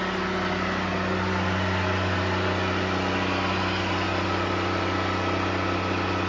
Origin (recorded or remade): recorded